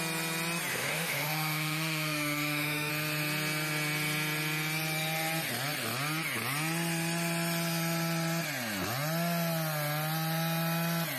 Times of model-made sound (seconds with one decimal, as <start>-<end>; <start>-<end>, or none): 0.7-2.9